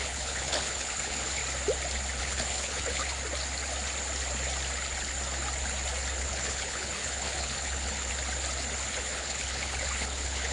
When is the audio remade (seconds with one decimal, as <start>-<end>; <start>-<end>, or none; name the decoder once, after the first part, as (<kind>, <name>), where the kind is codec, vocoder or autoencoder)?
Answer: 0.0-1.4 (codec, HILCodec); 2.2-3.0; 6.2-8.1; 8.9-10.5